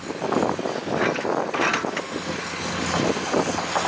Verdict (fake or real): real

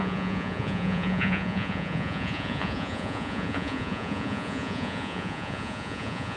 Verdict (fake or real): fake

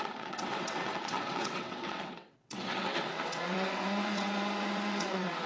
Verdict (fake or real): fake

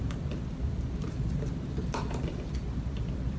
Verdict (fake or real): fake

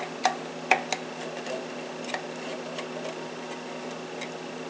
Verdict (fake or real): real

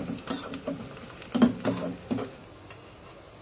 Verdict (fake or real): real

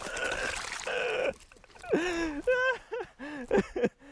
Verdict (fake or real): real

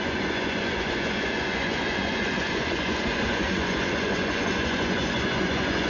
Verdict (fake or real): fake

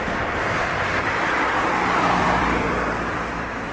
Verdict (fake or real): fake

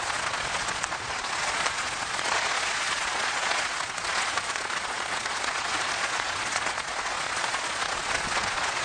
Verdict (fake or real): fake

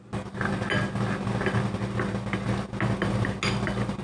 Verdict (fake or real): real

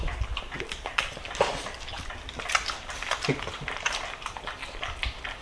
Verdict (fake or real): fake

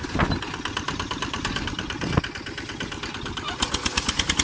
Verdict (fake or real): real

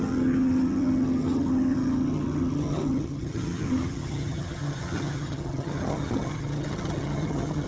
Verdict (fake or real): fake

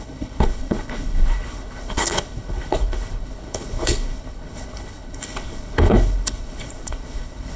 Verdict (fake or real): fake